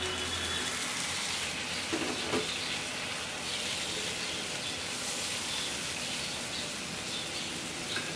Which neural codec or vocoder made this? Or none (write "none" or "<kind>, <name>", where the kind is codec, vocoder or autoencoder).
none